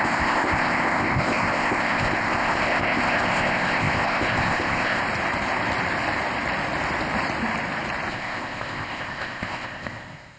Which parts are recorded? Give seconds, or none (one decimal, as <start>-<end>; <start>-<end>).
5.0-8.1